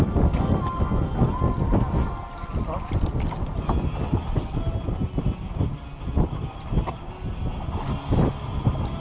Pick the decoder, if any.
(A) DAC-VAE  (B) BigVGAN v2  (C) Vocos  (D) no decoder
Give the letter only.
D